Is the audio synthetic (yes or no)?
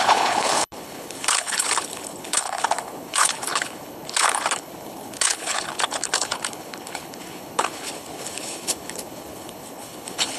yes